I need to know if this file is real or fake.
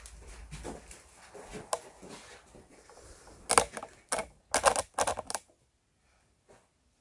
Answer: real